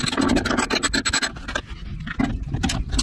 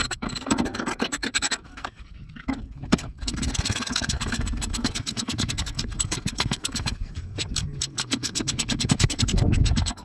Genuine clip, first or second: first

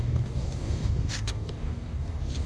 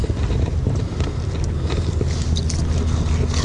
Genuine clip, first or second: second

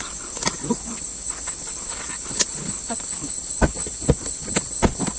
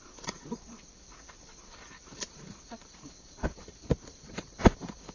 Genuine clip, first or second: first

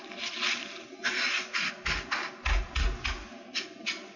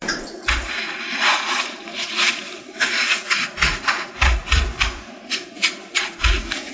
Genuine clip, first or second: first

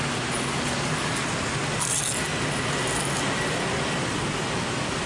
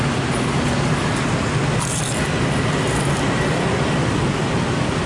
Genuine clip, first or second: first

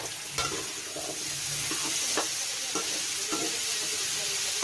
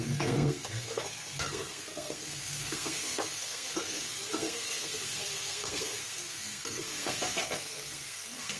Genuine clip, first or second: first